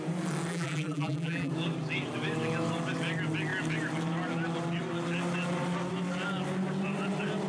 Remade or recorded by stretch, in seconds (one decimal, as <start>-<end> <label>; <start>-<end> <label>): 0.0-0.5 recorded; 0.5-1.5 remade; 1.5-7.5 recorded